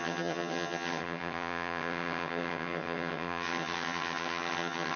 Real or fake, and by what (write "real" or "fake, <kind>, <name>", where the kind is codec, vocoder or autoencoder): fake, vocoder, HiFi-GAN